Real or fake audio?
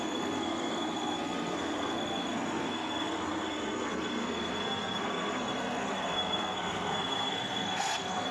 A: fake